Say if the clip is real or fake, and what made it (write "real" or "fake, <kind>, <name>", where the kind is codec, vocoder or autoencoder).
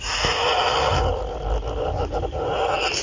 real